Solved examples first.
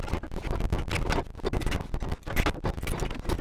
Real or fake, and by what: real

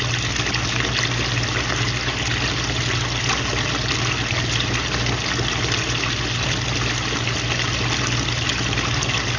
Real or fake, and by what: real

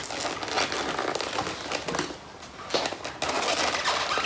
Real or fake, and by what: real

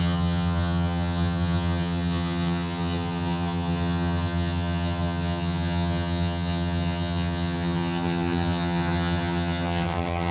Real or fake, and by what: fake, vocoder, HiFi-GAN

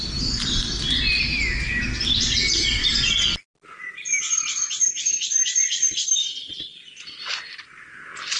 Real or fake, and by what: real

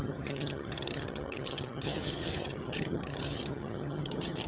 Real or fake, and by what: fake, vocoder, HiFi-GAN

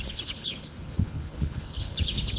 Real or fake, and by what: fake, codec, HILCodec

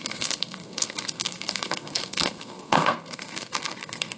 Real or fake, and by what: fake, codec, SNAC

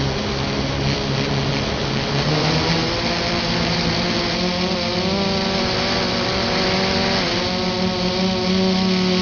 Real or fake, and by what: real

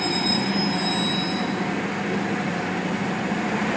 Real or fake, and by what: real